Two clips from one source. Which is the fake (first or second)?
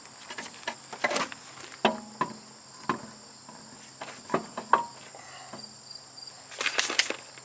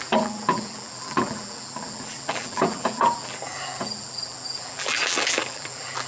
second